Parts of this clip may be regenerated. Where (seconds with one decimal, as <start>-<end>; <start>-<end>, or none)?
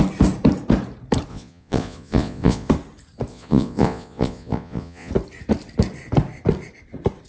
1.3-2.7; 3.3-5.1